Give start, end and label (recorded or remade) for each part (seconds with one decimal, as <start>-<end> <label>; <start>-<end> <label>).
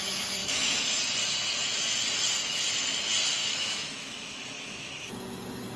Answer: 0.0-0.4 recorded; 0.4-1.0 remade; 1.0-3.4 recorded; 3.4-5.1 remade; 5.1-5.8 recorded